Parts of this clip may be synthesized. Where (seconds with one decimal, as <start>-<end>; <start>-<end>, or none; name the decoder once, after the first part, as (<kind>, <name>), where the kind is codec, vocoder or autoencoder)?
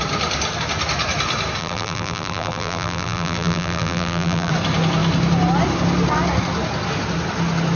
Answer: 1.6-4.5 (vocoder, BigVGAN v2)